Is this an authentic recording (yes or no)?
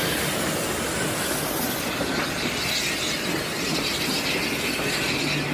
yes